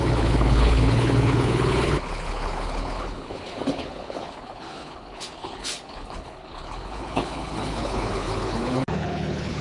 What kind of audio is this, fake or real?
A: fake